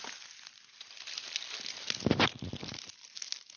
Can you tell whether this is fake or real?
real